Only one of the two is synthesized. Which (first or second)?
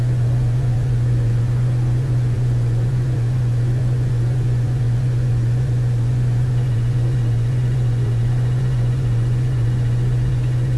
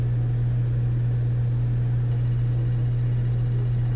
first